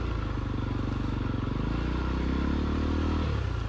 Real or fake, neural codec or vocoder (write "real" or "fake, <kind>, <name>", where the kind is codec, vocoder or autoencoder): real